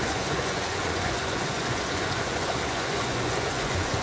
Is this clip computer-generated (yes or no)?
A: yes